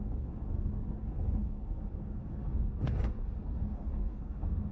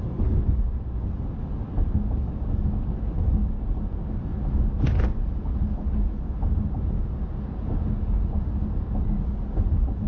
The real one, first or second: second